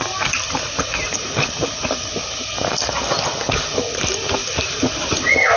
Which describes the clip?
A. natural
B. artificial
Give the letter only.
A